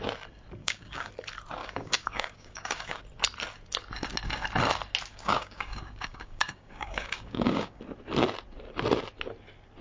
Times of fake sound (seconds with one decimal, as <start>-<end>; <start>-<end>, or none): 0.6-1.1; 1.6-3.0; 5.1-7.8